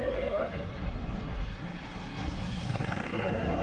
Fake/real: fake